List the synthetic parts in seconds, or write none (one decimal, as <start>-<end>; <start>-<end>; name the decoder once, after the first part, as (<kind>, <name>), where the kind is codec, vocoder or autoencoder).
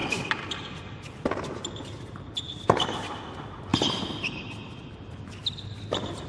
2.0-6.3 (vocoder, BigVGAN v2)